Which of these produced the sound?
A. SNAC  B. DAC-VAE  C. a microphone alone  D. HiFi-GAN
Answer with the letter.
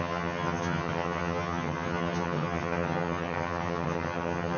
D